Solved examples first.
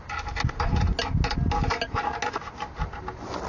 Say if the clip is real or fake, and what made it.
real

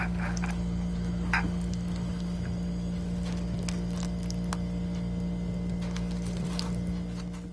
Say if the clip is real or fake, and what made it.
real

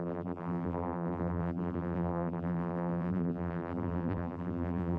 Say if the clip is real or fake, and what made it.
fake, vocoder, BigVGAN v2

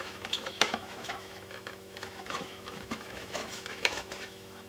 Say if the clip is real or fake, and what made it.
fake, autoencoder, DAC-VAE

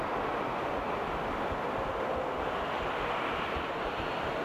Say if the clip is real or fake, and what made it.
real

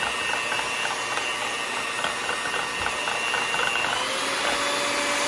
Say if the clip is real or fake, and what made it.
real